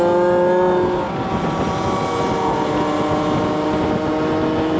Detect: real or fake real